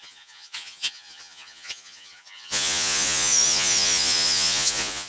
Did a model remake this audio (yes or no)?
yes